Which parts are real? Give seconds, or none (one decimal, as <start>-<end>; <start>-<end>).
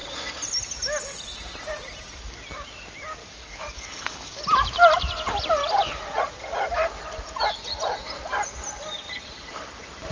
0.0-3.2; 4.4-10.1